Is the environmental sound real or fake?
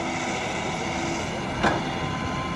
real